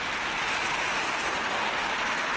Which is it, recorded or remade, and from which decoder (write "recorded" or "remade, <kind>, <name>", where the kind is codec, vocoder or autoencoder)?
remade, vocoder, BigVGAN v2